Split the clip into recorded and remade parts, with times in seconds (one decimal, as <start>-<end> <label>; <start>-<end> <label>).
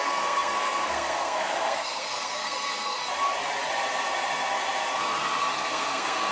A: 0.0-3.0 remade; 3.0-5.5 recorded; 5.5-6.3 remade